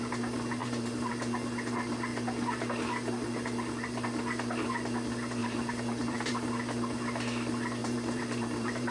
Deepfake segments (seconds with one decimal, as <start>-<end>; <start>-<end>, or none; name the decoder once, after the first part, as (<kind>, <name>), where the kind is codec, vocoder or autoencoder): 0.6-1.1 (vocoder, BigVGAN v2); 5.4-6.3; 7.8-8.9